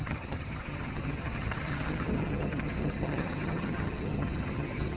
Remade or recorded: remade